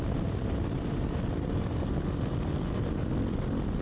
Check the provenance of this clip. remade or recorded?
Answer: recorded